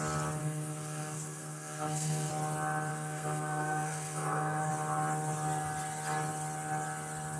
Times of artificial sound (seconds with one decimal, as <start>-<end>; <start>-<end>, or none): 0.4-2.3; 2.9-4.7

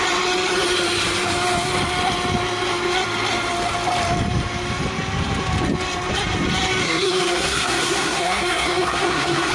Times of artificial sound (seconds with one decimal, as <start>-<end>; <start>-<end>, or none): 6.8-9.5

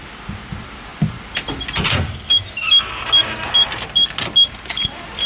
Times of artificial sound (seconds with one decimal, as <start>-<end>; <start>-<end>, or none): none

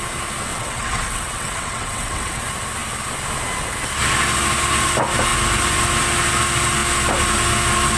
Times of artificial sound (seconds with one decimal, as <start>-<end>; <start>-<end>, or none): 0.5-2.4

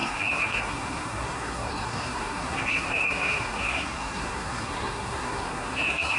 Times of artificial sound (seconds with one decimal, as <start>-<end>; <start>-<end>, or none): 0.0-6.2

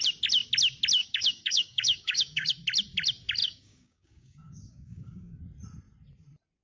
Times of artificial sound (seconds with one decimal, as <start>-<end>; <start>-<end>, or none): 1.0-2.5; 3.4-5.4